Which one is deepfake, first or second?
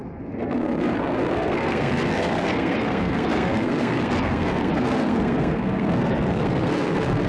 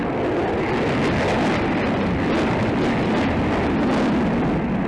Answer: first